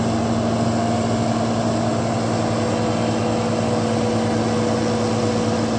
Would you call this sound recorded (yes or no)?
yes